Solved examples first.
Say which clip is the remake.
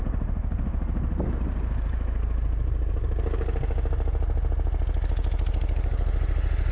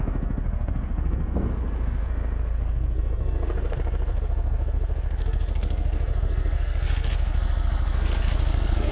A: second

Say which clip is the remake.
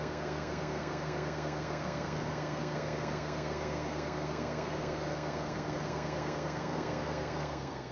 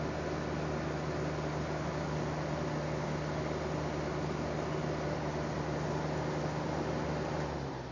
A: first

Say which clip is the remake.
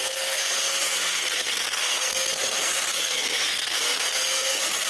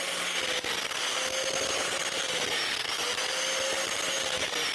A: first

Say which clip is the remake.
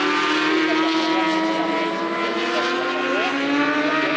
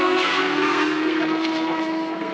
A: second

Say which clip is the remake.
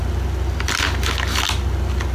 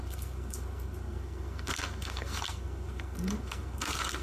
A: second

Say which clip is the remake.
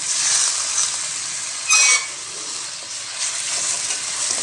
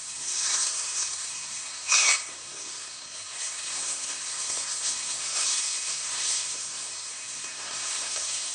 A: second